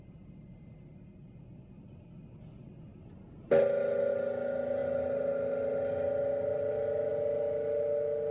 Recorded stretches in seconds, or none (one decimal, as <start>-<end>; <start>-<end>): 0.0-8.3